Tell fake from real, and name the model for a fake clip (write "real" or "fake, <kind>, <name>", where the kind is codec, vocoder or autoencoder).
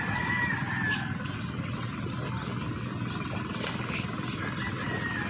real